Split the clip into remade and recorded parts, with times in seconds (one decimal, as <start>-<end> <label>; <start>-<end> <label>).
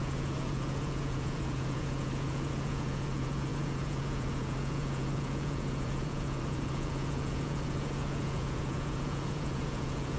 0.0-10.2 remade